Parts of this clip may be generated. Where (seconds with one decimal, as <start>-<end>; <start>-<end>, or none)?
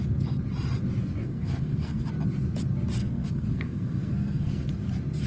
1.2-2.1; 3.0-4.7